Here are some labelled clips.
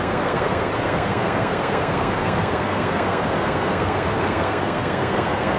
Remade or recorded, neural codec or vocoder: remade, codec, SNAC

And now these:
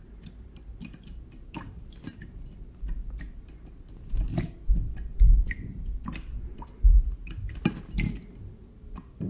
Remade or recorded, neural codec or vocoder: recorded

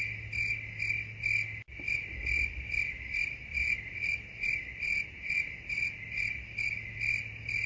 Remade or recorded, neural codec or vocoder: recorded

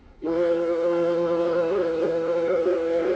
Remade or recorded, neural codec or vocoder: remade, codec, SNAC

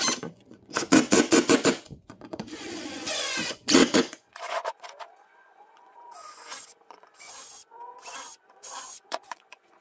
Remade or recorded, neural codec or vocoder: remade, vocoder, Vocos